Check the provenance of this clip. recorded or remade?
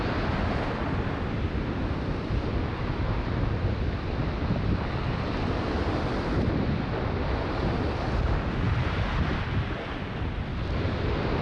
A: recorded